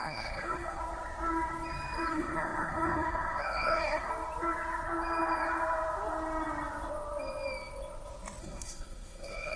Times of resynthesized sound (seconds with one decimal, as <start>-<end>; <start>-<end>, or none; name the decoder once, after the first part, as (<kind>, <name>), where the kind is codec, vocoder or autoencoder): 0.0-0.8 (codec, SNAC); 2.1-4.1; 8.4-9.6